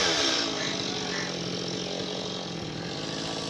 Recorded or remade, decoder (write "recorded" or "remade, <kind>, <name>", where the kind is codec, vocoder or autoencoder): recorded